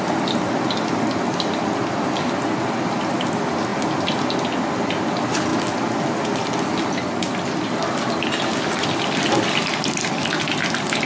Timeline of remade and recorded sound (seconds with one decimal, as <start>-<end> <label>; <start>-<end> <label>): 0.0-11.1 recorded